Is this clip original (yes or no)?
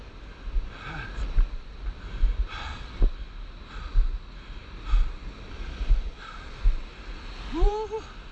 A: yes